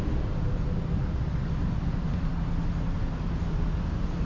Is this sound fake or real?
real